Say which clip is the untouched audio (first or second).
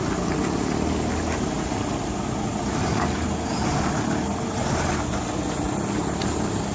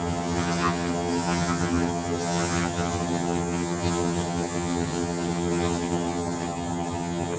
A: first